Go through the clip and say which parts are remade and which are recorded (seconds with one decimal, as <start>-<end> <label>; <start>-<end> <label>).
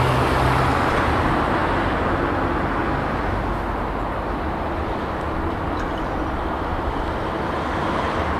0.0-8.4 recorded